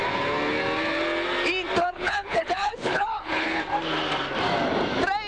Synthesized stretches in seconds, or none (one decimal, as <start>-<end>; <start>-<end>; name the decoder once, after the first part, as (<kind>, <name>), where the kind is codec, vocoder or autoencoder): 1.8-3.6 (codec, HILCodec)